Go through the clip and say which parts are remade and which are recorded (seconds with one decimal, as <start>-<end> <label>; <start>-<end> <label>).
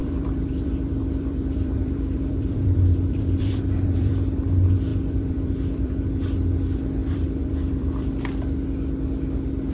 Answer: 0.0-4.1 remade; 4.1-4.9 recorded; 4.9-5.9 remade; 5.9-7.0 recorded; 7.0-8.1 remade; 8.1-9.7 recorded